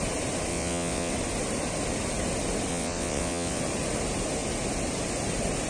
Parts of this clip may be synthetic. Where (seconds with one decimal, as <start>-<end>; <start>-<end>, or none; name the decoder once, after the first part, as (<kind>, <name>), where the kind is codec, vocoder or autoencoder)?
0.5-1.1 (vocoder, WaveNeXt); 2.7-3.6